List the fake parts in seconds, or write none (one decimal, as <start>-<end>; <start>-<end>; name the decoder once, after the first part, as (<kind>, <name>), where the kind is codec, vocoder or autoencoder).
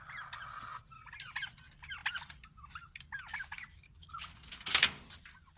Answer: none